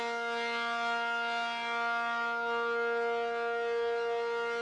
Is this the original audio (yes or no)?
yes